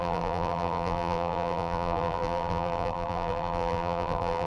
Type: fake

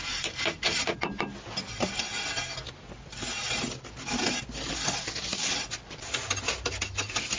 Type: real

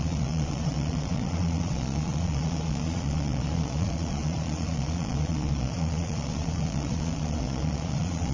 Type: fake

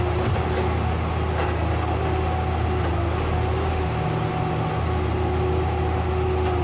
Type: real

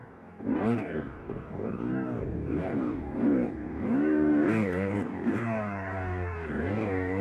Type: fake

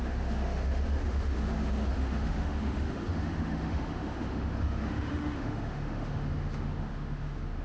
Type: fake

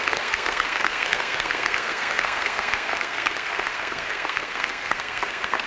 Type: fake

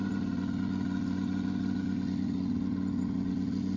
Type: real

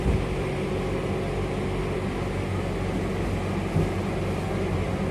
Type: real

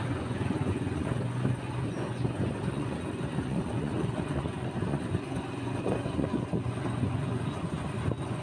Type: fake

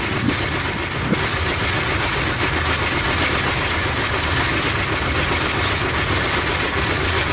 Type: real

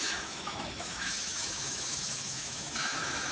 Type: fake